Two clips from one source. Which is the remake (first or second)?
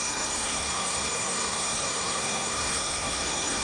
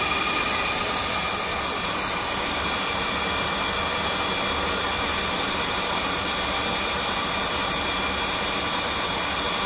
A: first